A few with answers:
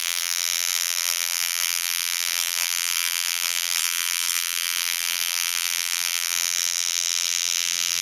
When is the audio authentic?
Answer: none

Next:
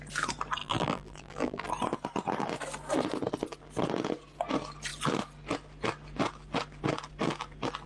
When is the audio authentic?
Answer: 0.0-0.6; 1.7-7.9

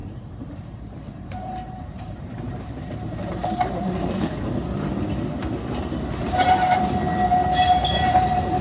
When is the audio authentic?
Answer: 3.9-8.6

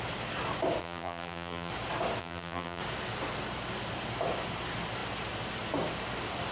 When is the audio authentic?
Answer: 0.0-0.8; 1.7-2.2; 2.8-6.5